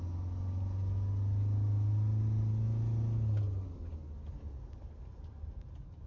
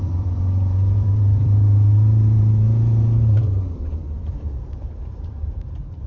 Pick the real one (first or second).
first